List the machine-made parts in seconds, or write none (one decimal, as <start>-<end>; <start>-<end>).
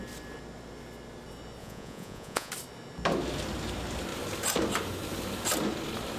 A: 1.6-2.5